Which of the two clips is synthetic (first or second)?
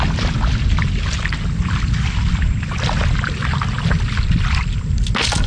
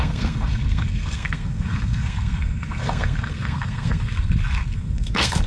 second